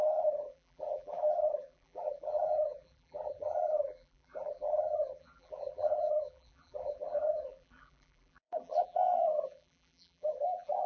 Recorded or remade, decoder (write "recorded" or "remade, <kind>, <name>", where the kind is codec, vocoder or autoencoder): remade, vocoder, BigVGAN v2